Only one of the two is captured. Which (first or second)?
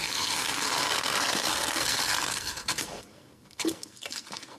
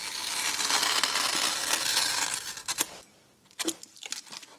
second